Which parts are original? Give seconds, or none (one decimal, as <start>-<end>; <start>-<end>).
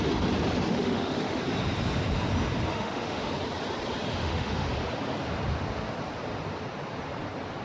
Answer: 0.0-0.7; 1.4-2.7; 3.3-4.2; 4.7-7.6